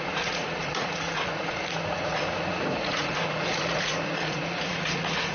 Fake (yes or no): yes